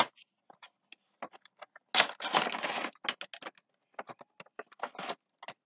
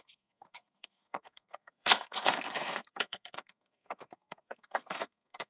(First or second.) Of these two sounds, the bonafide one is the first